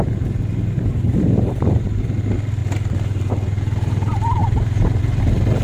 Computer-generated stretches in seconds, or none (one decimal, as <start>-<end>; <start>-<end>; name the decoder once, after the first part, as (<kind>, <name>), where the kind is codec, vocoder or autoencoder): 1.1-1.9 (vocoder, BigVGAN v2); 2.6-3.3; 4.4-5.0